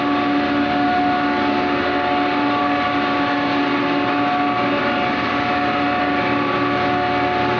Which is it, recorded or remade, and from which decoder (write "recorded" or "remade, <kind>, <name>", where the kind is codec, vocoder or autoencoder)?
recorded